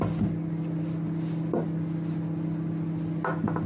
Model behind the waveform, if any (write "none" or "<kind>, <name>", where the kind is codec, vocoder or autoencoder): none